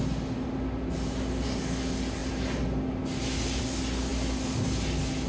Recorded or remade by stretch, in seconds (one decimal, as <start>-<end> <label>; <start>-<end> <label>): 0.0-5.3 recorded